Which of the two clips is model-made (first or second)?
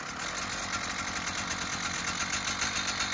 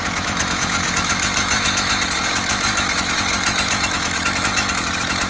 second